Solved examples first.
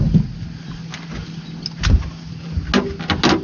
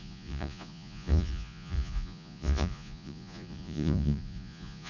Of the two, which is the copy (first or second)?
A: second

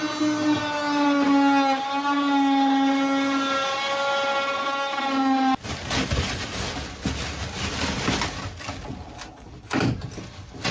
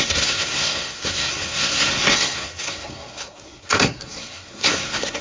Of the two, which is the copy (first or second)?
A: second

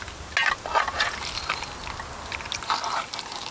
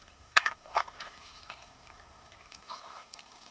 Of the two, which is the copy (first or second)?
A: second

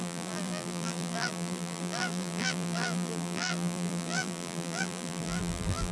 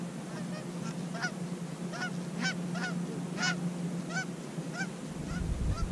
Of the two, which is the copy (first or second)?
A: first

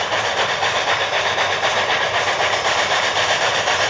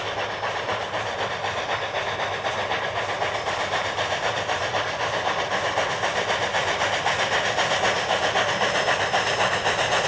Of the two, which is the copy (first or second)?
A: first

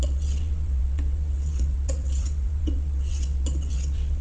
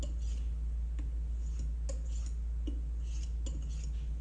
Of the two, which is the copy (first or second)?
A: first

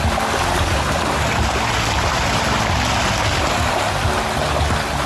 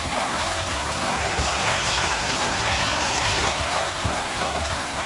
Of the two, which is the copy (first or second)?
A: second